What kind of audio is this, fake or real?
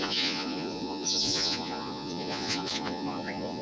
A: fake